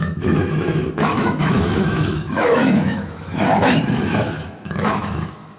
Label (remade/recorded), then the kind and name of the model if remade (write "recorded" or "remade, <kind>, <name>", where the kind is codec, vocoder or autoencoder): remade, autoencoder, DAC-VAE